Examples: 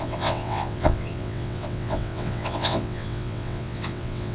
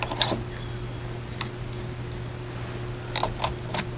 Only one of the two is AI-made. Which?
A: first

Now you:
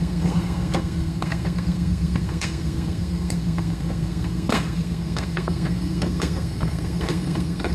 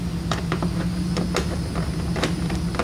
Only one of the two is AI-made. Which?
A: first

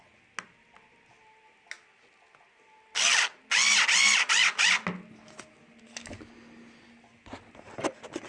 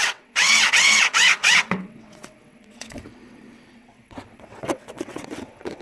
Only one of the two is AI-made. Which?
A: second